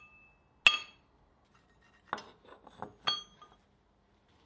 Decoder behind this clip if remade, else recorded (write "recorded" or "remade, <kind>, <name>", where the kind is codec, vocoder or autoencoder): recorded